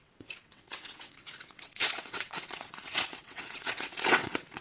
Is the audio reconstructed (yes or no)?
yes